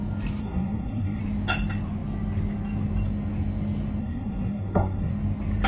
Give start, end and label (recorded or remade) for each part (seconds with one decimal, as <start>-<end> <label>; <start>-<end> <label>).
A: 0.0-0.4 recorded; 0.4-1.2 remade; 1.2-4.0 recorded; 4.0-5.1 remade; 5.1-5.7 recorded